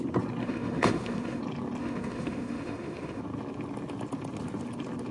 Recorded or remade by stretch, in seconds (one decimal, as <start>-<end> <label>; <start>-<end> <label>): 0.0-0.4 recorded; 0.4-1.4 remade; 1.4-1.8 recorded; 1.8-3.2 remade; 3.2-5.1 recorded